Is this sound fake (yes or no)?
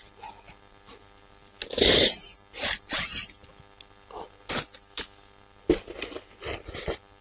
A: no